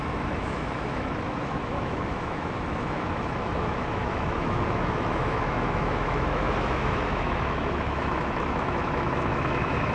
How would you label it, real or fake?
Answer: fake